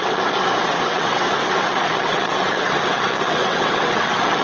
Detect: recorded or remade remade